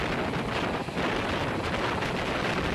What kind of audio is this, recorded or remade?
recorded